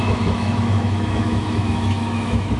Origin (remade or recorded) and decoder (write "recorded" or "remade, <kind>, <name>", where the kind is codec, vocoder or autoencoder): remade, autoencoder, DAC-VAE